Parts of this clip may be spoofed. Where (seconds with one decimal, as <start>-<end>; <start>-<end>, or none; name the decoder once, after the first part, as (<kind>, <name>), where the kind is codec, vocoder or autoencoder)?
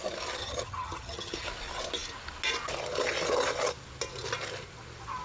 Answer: 0.4-1.5 (vocoder, HiFi-GAN)